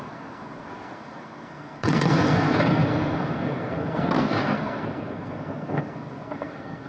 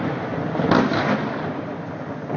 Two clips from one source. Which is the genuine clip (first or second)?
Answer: second